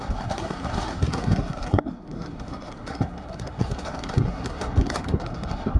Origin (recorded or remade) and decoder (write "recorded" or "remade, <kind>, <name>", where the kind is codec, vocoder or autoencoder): remade, codec, SNAC